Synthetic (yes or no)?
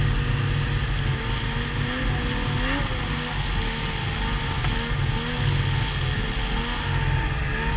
no